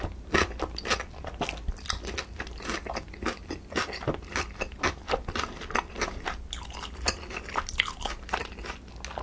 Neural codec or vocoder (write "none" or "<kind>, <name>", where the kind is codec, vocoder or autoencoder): none